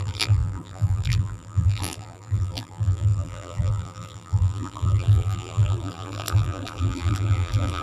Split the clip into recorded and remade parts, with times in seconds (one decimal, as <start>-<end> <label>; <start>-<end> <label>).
0.0-7.8 remade